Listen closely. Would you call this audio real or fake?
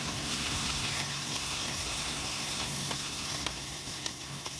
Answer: fake